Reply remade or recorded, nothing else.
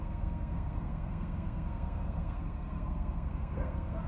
remade